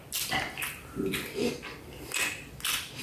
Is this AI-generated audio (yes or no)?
no